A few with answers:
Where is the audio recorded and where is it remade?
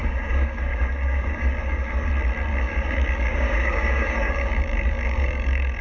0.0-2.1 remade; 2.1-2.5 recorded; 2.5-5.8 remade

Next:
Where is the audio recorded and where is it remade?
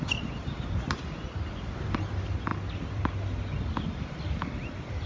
0.0-5.1 recorded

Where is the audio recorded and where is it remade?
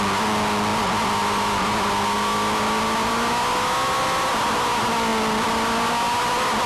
0.0-0.7 recorded; 0.7-3.1 remade; 3.1-6.7 recorded